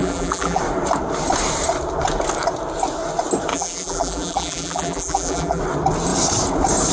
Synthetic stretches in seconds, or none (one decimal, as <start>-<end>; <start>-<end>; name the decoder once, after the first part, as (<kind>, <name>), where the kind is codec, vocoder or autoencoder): 0.0-0.6 (vocoder, BigVGAN v2); 3.5-5.6